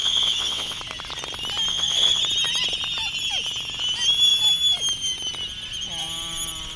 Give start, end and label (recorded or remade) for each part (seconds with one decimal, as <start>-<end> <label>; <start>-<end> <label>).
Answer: 0.0-0.8 remade; 0.8-1.7 recorded; 1.7-2.2 remade; 2.2-6.8 recorded